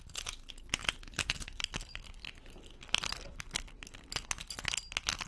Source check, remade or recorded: recorded